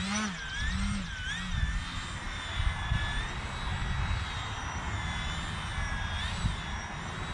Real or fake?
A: real